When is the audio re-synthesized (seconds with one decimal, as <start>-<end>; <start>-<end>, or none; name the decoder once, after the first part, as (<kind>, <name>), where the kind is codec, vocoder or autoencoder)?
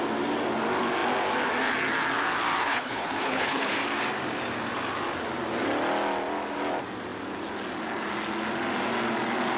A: 2.6-3.7 (codec, HILCodec)